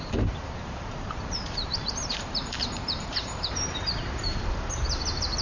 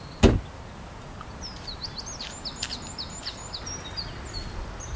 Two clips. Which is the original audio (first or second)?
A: second